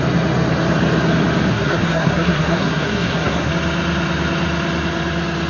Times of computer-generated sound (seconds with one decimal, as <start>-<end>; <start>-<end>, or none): 1.5-3.5